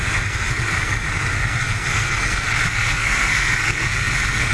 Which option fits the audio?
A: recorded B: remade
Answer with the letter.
B